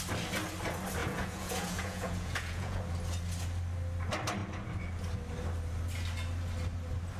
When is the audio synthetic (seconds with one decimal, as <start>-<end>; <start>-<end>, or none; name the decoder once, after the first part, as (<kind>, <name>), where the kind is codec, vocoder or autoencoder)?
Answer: 1.0-2.8 (vocoder, Vocos)